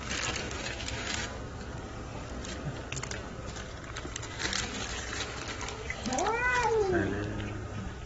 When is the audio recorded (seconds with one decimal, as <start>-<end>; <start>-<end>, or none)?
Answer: 0.0-0.4; 1.4-8.1